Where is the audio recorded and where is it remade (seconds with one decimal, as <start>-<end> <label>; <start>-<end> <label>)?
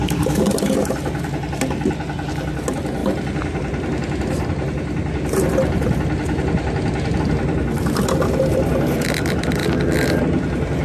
0.0-0.5 remade; 0.5-10.8 recorded